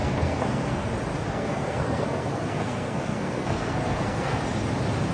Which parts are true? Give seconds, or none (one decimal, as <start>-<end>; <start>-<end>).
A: 0.9-1.3; 4.4-5.1